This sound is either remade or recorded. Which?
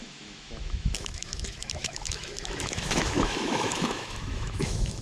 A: remade